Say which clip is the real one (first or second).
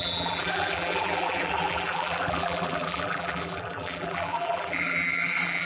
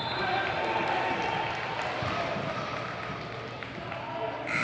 second